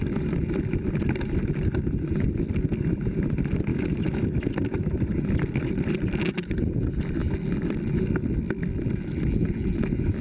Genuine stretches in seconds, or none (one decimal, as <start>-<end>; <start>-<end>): 0.0-3.7; 4.5-10.2